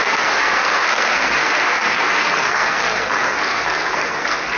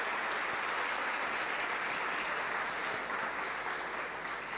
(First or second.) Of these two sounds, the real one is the second